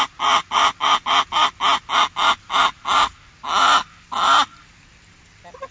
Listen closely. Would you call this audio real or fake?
real